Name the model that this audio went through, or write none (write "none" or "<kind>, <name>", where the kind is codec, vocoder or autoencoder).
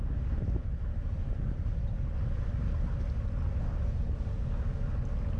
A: none